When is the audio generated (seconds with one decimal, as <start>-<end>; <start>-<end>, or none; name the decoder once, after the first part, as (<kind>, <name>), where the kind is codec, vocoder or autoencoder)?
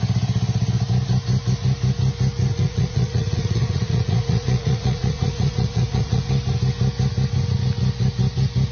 2.5-6.3 (vocoder, Vocos)